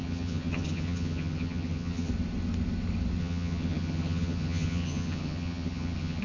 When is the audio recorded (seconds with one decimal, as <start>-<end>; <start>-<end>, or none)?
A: 2.1-3.2